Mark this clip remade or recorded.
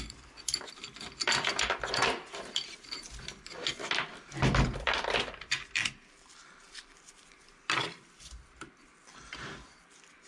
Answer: remade